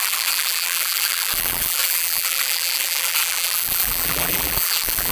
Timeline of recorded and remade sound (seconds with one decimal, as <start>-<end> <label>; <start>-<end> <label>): 0.0-5.1 remade